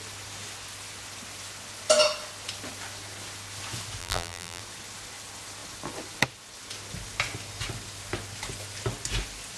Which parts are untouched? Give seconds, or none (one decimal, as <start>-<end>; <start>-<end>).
0.0-4.0; 4.6-9.6